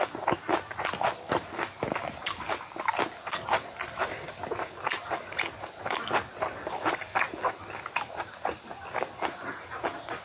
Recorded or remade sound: recorded